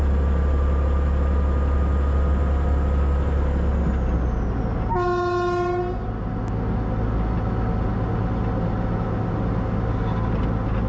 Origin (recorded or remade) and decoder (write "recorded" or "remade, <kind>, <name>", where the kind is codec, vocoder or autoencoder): recorded